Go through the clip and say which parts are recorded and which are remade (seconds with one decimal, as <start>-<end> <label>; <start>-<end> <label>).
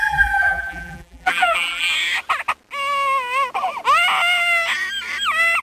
0.0-1.9 remade; 1.9-5.6 recorded